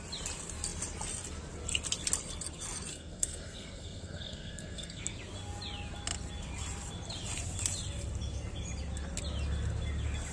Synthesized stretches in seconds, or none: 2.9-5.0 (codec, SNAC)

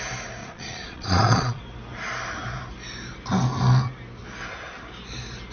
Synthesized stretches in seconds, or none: 0.4-1.6 (vocoder, Vocos)